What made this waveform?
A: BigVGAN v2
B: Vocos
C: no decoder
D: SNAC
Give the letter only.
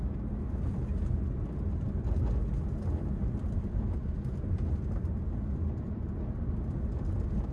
C